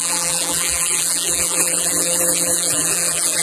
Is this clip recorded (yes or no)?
no